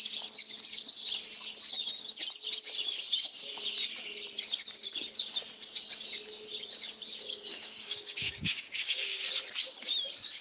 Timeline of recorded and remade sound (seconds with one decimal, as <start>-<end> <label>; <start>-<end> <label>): 0.0-7.5 recorded; 7.5-9.2 remade; 9.2-10.4 recorded